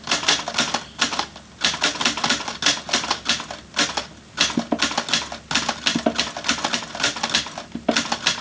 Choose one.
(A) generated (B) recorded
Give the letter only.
B